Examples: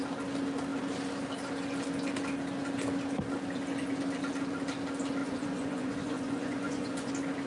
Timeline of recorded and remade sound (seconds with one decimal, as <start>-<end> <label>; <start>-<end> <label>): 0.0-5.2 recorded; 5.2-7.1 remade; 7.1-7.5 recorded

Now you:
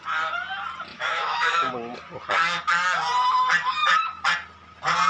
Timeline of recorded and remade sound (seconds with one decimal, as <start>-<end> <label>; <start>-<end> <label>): 0.0-0.9 recorded; 0.9-1.7 remade; 1.7-5.1 recorded

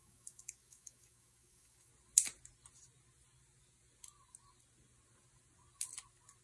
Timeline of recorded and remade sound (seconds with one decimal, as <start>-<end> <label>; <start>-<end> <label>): 0.0-1.9 remade; 1.9-6.4 recorded

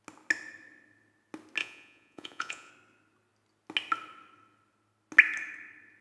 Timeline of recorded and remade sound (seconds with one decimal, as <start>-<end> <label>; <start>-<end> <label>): 0.0-1.6 recorded; 1.6-2.7 remade; 2.7-6.0 recorded

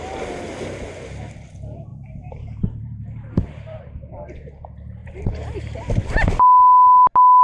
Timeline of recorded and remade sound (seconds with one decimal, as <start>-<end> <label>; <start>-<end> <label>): 0.0-1.9 recorded; 1.9-3.8 remade; 3.8-5.0 recorded; 5.0-5.9 remade; 5.9-7.4 recorded

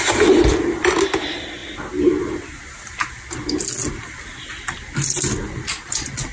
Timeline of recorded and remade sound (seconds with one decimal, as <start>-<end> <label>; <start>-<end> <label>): 0.0-6.3 recorded

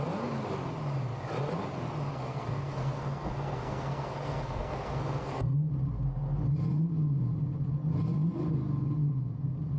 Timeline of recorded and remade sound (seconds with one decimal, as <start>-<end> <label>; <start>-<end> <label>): 0.0-2.1 recorded; 2.1-5.7 remade; 5.7-9.8 recorded

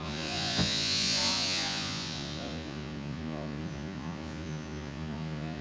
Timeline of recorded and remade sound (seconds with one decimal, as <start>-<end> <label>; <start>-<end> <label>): 0.0-5.6 remade